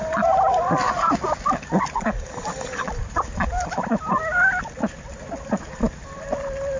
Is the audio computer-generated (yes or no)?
yes